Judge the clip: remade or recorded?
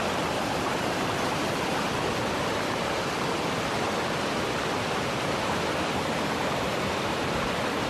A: remade